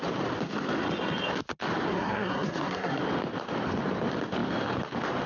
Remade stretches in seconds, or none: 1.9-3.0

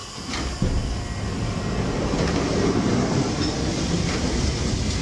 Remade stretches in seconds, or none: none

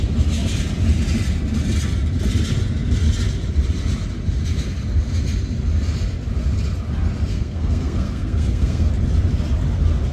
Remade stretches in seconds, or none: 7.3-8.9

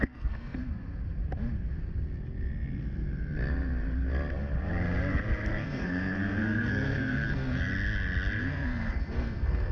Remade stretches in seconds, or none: 0.0-0.6; 5.5-7.7; 8.4-9.7

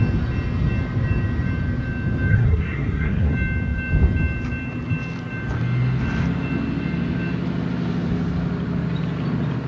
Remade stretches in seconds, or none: 2.3-3.3

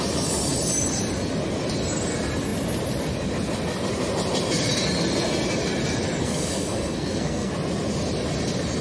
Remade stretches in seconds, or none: 6.2-7.5

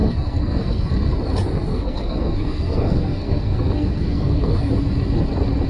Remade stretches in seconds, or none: 0.0-0.9; 1.7-4.7